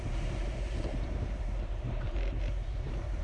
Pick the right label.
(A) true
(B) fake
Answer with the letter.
B